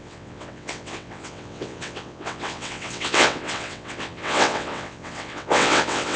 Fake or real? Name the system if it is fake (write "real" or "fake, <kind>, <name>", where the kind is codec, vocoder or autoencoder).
fake, vocoder, WaveNeXt